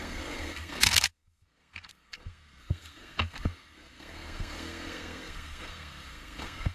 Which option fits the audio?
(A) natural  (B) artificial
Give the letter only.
B